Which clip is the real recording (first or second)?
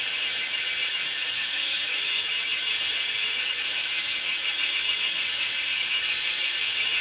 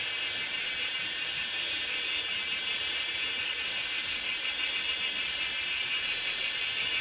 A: second